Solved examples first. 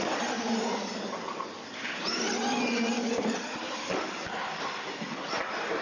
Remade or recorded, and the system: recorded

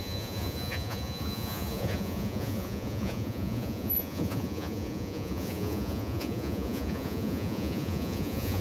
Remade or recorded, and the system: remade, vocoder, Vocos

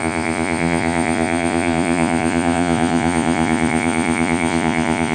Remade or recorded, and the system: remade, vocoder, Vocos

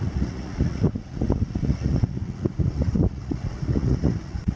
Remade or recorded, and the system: remade, vocoder, Vocos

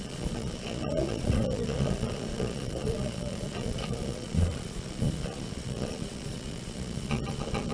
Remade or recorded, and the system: remade, vocoder, Vocos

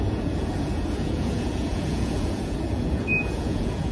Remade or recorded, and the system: remade, vocoder, Vocos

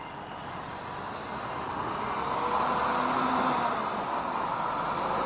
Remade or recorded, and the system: recorded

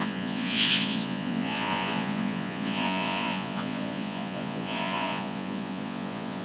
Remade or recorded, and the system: remade, vocoder, Vocos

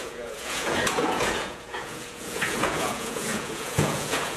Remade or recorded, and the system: remade, vocoder, Vocos